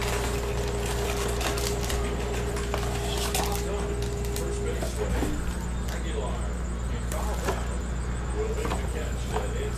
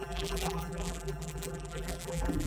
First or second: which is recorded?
first